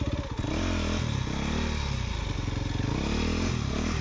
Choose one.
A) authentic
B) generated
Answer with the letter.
A